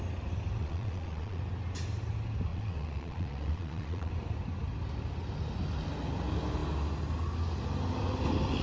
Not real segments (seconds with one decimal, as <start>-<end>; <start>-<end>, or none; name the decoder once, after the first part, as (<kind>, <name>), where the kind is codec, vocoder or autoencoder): 0.6-1.4 (vocoder, Vocos); 2.5-4.1